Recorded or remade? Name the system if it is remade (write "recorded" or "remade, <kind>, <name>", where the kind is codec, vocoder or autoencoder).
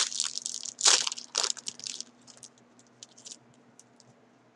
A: recorded